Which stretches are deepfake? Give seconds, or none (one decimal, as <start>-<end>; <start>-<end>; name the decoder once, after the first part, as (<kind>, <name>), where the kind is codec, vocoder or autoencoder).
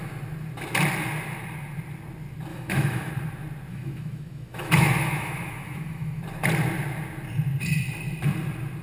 2.5-3.1 (autoencoder, DAC-VAE); 3.7-6.2